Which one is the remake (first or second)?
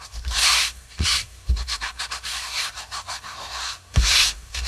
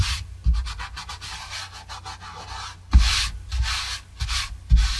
first